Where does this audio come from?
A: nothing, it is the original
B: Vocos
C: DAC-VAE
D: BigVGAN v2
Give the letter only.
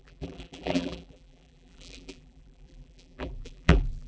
D